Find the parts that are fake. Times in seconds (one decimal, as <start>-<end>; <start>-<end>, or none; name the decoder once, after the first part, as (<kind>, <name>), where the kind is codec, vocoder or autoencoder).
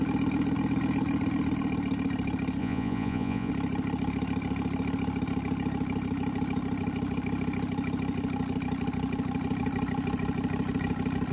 2.6-3.5 (vocoder, Vocos)